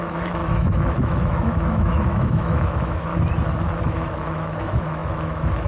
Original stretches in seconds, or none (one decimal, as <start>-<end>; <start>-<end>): 3.1-3.8

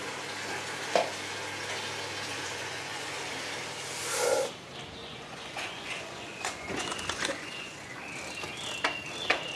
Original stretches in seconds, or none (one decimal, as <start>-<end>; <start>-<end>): 0.0-2.3; 3.1-5.0; 8.0-9.6

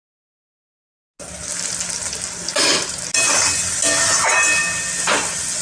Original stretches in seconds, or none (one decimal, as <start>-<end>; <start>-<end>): 0.0-5.6

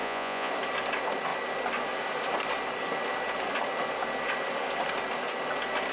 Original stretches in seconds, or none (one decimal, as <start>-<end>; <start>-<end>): 0.5-5.9